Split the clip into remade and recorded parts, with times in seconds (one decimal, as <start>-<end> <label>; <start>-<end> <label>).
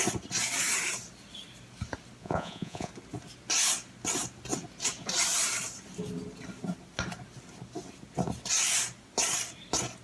0.0-2.2 recorded; 2.2-2.9 remade; 2.9-10.0 recorded